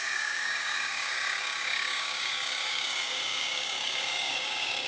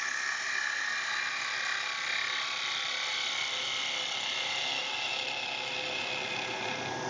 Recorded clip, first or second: second